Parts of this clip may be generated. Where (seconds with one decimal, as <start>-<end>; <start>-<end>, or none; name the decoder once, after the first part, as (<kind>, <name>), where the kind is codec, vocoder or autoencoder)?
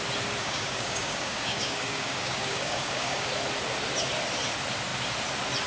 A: 0.4-3.3 (codec, DAC)